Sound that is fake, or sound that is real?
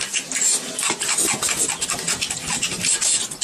real